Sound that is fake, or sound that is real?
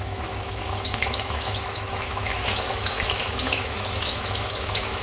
fake